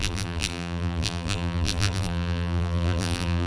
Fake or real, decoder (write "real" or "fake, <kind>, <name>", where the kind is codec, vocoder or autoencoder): fake, vocoder, BigVGAN v2